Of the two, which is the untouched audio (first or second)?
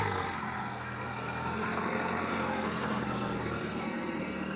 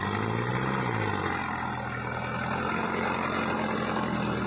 second